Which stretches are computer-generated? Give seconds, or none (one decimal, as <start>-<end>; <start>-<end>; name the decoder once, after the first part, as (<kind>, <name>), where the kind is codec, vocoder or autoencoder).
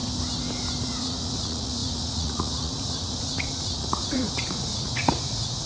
0.8-5.7 (vocoder, Vocos)